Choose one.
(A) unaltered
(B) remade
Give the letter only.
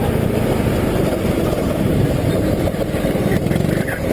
B